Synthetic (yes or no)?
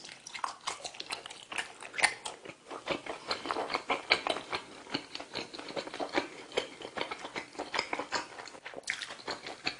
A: no